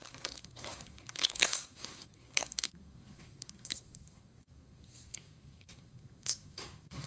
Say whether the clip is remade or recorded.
remade